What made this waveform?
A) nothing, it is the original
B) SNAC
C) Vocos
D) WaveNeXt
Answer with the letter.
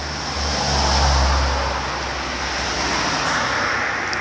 A